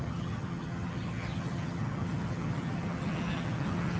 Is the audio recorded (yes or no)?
no